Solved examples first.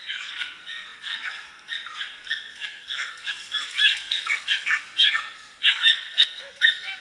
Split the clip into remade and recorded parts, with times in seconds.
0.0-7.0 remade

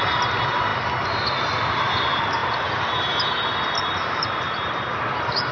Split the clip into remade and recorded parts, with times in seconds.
0.0-5.5 recorded

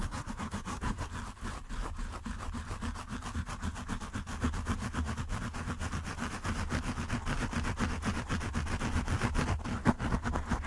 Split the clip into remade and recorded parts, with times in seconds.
0.0-1.1 remade; 1.1-10.7 recorded

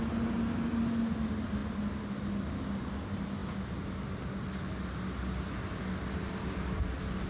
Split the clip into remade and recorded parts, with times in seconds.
0.0-7.3 recorded